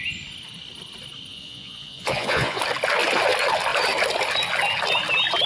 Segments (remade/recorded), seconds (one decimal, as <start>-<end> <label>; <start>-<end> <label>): 0.0-1.3 recorded; 1.3-2.6 remade; 2.6-5.5 recorded